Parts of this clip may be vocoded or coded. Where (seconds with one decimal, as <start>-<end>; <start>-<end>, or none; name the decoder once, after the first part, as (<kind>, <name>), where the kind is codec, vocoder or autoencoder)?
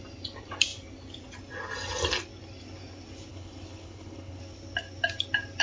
3.3-4.4 (codec, HILCodec)